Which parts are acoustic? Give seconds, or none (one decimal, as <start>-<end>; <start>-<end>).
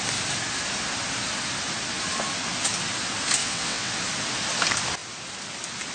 0.0-3.4; 3.9-5.9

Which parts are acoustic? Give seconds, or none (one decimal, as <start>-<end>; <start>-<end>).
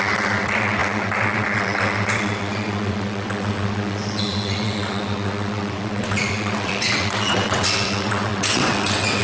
none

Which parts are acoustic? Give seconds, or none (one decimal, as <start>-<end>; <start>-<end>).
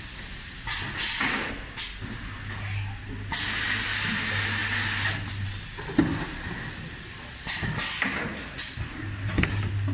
0.0-9.9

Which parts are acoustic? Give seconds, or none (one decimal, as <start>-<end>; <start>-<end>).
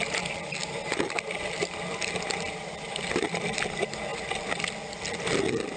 0.0-5.8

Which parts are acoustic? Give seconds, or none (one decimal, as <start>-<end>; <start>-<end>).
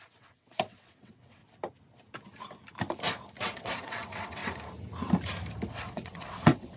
1.4-3.4; 4.4-5.7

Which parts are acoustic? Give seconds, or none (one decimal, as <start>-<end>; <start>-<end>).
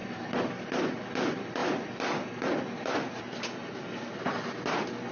0.0-5.1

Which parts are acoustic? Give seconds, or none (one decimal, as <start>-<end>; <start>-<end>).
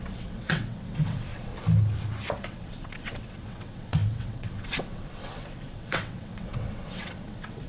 1.5-2.3